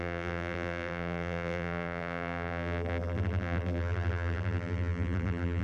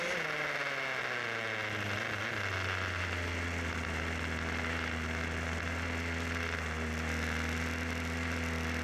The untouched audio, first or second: second